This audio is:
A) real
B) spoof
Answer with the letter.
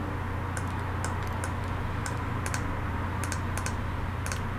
A